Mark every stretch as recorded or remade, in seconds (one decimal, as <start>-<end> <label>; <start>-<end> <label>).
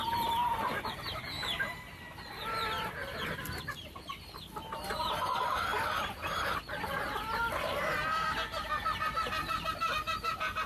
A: 0.0-10.7 recorded